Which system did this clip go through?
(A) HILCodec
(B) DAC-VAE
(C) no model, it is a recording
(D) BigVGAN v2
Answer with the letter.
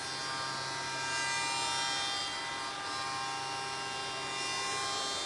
C